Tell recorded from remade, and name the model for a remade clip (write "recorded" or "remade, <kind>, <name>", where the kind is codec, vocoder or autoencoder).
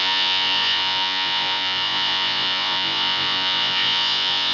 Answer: remade, vocoder, Vocos